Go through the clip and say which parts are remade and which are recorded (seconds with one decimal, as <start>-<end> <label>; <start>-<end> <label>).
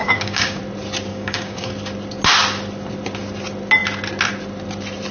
0.0-0.6 remade; 0.6-1.1 recorded; 1.1-1.7 remade; 1.7-5.1 recorded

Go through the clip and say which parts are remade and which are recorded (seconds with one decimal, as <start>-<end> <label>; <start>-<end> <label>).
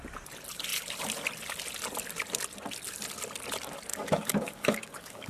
0.0-3.9 recorded; 3.9-5.3 remade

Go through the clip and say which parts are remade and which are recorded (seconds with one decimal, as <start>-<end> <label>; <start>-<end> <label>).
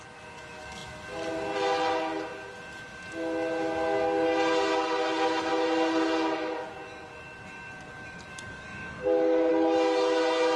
0.0-8.3 recorded; 8.3-9.5 remade; 9.5-10.6 recorded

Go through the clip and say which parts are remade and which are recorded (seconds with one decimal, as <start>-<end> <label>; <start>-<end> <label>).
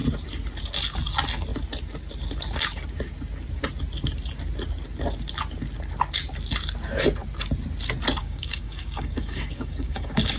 0.0-8.2 recorded; 8.2-10.4 remade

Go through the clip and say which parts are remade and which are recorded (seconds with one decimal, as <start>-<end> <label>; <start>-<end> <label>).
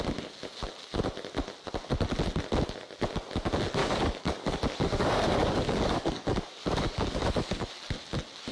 0.0-3.8 recorded; 3.8-7.7 remade; 7.7-8.5 recorded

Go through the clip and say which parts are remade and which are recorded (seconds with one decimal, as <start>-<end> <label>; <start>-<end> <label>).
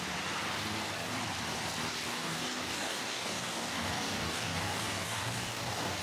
0.0-2.1 recorded; 2.1-6.0 remade